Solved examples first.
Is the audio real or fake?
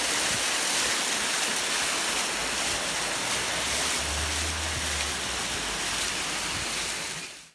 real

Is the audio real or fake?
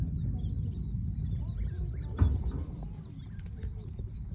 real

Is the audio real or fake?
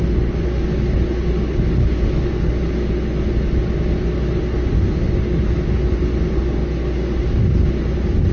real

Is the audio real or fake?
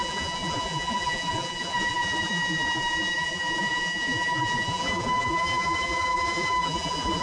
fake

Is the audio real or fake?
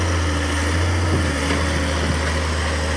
real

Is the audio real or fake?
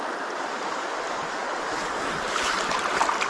real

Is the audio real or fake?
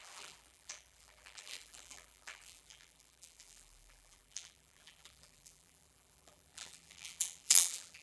fake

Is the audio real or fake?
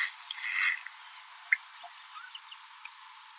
real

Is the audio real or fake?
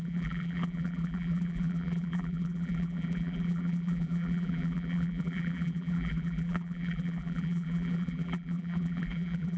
fake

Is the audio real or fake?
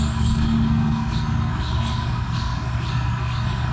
fake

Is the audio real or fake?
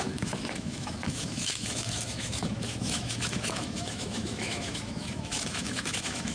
fake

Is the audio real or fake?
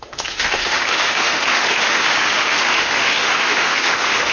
fake